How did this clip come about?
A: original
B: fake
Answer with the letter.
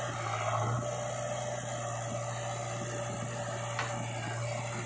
A